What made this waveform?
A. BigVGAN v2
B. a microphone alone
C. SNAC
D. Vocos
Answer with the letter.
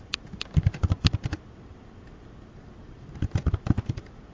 B